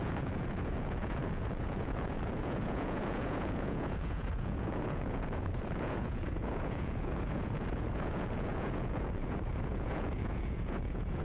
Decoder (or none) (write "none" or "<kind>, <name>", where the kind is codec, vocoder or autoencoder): vocoder, Vocos